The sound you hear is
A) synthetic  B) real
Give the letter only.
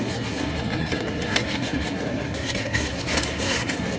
A